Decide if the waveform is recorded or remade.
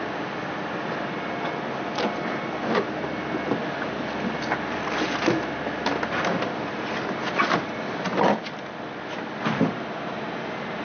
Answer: recorded